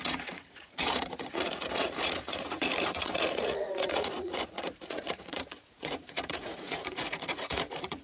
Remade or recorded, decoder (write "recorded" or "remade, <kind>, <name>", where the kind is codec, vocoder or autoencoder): remade, vocoder, Vocos